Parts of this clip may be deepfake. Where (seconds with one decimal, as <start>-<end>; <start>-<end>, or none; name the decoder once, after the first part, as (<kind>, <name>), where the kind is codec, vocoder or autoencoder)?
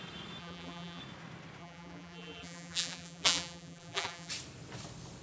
0.4-1.0 (vocoder, BigVGAN v2); 1.6-4.3